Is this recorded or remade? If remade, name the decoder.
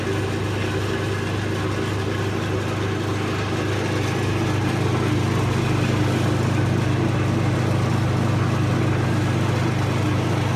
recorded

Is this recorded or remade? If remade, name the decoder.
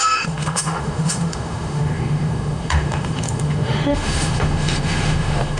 remade, autoencoder, DAC-VAE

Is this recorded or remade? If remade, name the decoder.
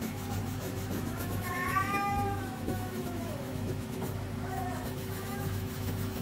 remade, autoencoder, DAC-VAE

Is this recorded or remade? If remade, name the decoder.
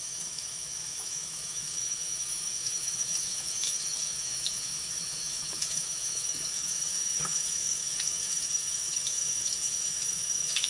remade, autoencoder, DAC-VAE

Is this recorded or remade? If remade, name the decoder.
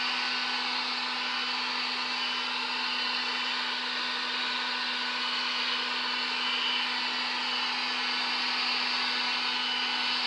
recorded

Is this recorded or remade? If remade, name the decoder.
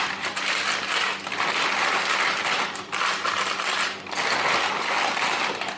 recorded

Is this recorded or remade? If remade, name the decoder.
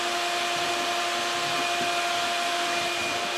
recorded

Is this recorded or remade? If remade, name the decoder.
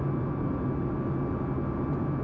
recorded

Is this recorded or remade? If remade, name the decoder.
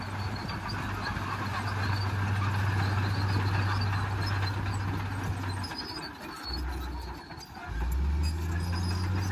recorded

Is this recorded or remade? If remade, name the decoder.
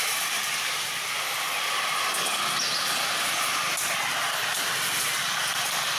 recorded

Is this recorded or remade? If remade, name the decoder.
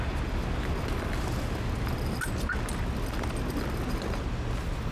recorded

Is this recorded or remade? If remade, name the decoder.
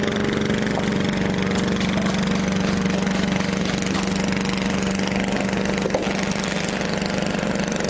recorded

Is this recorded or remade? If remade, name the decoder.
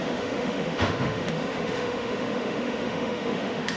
remade, autoencoder, DAC-VAE